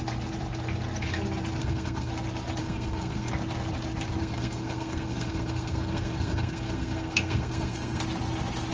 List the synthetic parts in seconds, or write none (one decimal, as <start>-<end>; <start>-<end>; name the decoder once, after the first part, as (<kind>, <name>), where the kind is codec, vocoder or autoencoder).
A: 1.6-2.1 (codec, SNAC); 2.6-3.3; 4.2-8.0